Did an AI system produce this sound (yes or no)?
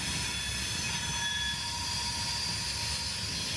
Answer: no